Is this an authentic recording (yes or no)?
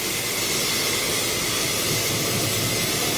yes